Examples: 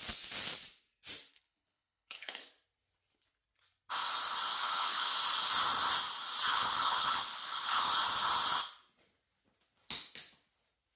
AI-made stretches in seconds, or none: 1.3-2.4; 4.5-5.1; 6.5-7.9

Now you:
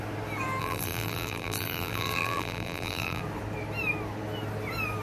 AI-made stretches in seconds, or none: 0.6-3.2